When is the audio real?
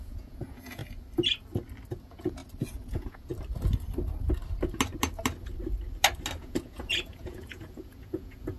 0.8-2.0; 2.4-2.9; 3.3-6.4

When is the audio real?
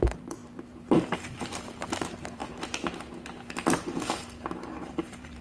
2.4-4.9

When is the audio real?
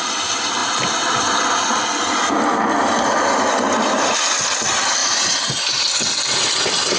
0.0-5.0; 5.9-7.0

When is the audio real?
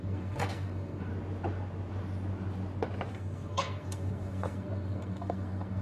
1.1-3.1